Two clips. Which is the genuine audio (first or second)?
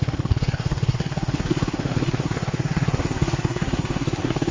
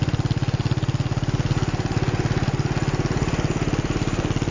second